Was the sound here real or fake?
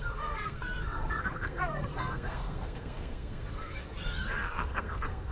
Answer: fake